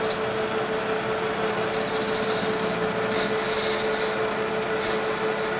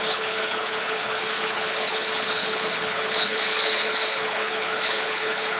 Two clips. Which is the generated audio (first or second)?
second